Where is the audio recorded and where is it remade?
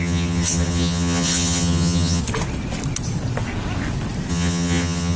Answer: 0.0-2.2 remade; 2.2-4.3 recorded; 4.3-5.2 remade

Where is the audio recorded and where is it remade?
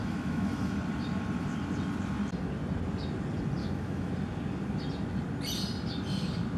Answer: 0.0-0.8 remade; 0.8-3.6 recorded; 3.6-4.1 remade; 4.1-6.6 recorded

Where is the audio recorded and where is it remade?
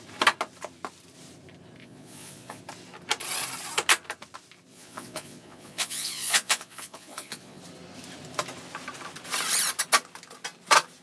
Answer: 0.0-1.8 recorded; 1.8-2.6 remade; 2.6-4.7 recorded; 4.7-7.6 remade; 7.6-11.0 recorded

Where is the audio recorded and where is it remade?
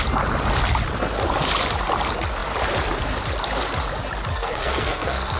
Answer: 0.0-4.3 recorded; 4.3-5.4 remade